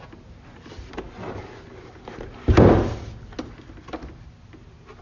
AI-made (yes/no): no